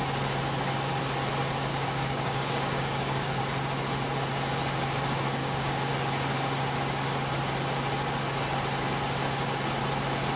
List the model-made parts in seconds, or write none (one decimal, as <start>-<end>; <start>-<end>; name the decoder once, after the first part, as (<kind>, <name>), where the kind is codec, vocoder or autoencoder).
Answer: 1.7-3.4 (codec, DAC); 5.4-5.9

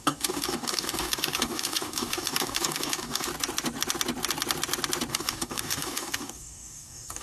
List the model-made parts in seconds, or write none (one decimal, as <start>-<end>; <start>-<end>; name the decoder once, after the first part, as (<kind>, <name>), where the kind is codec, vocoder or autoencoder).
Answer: 0.0-3.3 (codec, DAC); 5.1-7.2

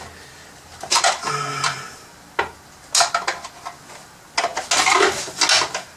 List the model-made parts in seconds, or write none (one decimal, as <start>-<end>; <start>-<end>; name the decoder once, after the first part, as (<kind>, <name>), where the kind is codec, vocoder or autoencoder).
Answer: none

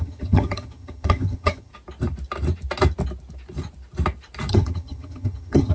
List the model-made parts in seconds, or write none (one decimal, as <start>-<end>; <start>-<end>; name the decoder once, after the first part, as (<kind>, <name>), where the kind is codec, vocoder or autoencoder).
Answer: 0.0-1.7 (vocoder, HiFi-GAN); 4.5-5.7